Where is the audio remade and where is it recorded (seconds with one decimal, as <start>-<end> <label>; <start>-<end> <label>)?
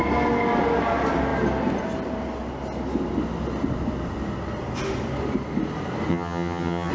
0.0-6.1 recorded; 6.1-6.9 remade